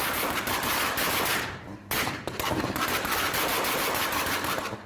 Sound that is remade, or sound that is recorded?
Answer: recorded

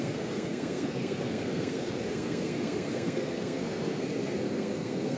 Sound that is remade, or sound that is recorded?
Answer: remade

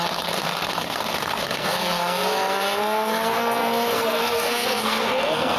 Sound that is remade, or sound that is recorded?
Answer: remade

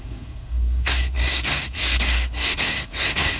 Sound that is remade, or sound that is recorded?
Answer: remade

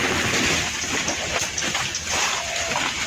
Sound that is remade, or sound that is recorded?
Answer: recorded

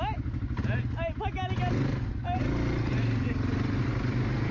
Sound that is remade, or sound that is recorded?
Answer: recorded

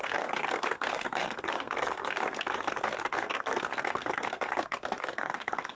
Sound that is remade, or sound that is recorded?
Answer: remade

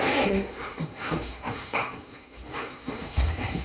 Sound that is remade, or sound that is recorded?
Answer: remade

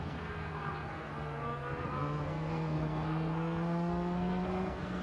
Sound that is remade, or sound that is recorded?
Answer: remade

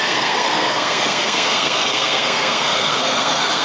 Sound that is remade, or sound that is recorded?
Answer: remade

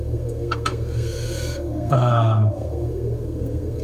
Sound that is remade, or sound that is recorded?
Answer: remade